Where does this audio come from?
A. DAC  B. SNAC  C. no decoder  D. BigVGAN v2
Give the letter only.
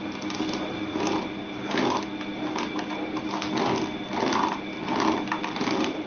C